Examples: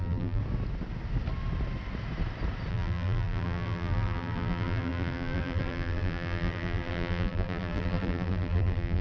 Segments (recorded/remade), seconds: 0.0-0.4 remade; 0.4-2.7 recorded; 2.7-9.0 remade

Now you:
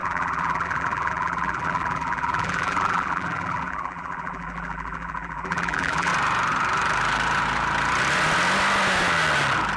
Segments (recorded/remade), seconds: 0.0-6.1 remade; 6.1-9.8 recorded